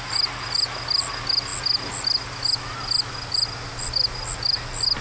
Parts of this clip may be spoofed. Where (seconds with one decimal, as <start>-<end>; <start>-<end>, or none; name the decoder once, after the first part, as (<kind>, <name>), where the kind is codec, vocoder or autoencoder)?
none